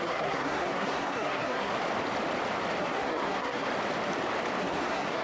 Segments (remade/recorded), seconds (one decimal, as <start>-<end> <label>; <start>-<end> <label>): 0.0-1.7 remade; 1.7-2.8 recorded; 2.8-3.7 remade; 3.7-4.6 recorded; 4.6-5.2 remade